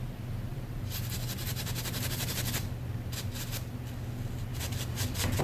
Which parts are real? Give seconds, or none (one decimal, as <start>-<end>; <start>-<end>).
0.0-0.5; 3.7-4.5